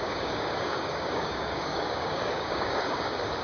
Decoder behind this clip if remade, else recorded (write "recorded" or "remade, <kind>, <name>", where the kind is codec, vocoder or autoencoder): remade, codec, DAC